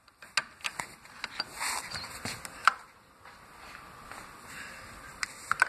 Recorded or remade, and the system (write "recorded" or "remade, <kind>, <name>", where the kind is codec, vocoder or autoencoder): recorded